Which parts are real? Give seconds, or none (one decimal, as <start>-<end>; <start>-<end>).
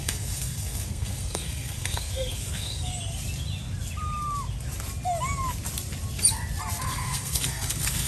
2.9-6.8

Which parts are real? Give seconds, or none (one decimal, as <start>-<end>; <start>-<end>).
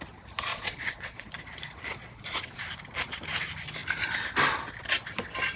0.0-0.5; 1.3-2.0; 2.6-5.6